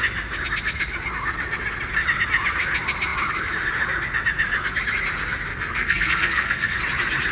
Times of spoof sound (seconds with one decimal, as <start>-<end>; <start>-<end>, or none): 5.5-6.8